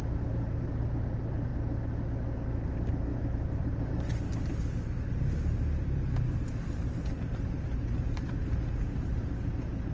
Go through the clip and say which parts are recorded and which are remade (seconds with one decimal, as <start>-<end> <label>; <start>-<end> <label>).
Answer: 0.0-3.1 recorded; 3.1-8.3 remade; 8.3-9.9 recorded